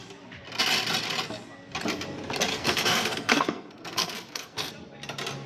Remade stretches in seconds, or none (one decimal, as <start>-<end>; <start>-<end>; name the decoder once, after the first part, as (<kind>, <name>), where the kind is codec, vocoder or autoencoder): 2.5-4.7 (codec, SNAC)